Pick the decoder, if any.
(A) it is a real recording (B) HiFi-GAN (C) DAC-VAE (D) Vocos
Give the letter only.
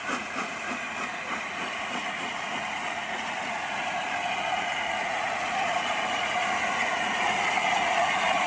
D